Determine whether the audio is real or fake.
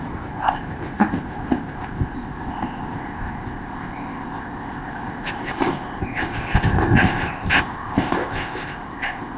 fake